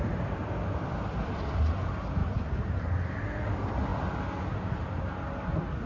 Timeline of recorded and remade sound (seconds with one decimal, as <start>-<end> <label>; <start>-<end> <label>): 0.0-2.2 remade; 2.2-2.7 recorded; 2.7-3.9 remade; 3.9-5.9 recorded